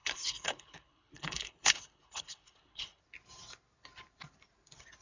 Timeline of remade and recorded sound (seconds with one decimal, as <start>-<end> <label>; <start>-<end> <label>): 0.0-3.0 remade; 3.0-5.0 recorded